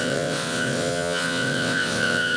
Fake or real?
fake